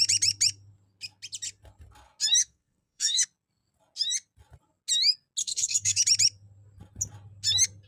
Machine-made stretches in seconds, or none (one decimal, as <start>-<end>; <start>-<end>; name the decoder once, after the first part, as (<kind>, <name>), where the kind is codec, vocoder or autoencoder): 2.4-3.2 (codec, SNAC); 5.4-6.0